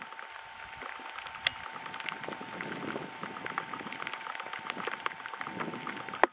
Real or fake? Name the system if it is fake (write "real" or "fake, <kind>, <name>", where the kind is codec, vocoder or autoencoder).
real